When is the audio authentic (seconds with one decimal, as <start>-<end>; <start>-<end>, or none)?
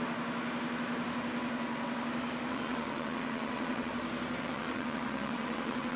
0.0-2.5; 3.9-4.4